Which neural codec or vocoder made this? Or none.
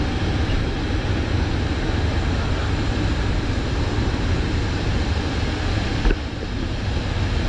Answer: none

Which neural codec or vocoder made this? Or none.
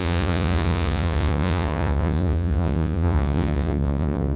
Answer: vocoder, Vocos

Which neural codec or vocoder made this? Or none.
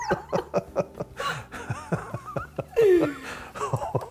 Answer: none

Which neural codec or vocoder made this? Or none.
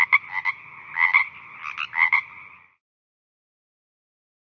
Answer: none